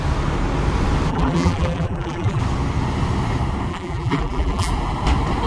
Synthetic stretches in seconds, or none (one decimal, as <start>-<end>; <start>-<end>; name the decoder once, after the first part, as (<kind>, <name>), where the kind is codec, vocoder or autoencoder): 1.1-2.4 (vocoder, BigVGAN v2); 3.7-4.7